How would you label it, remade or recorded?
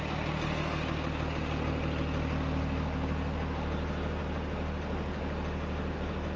recorded